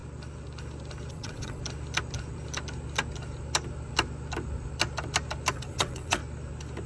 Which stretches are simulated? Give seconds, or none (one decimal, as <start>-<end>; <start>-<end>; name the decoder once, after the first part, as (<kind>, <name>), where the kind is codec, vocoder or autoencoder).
1.1-1.6 (vocoder, WaveNeXt); 5.5-6.2